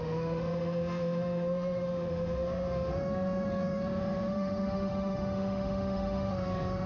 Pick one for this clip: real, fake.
fake